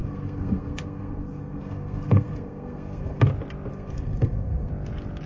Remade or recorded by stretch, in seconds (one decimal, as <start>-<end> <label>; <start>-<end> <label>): 0.0-3.2 remade; 3.2-3.7 recorded; 3.7-4.7 remade; 4.7-5.3 recorded